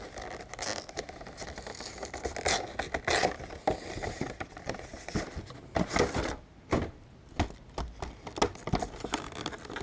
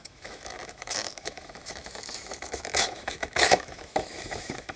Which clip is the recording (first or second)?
first